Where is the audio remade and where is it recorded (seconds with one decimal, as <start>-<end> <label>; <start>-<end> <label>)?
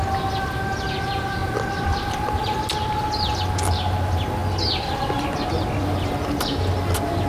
0.0-7.3 recorded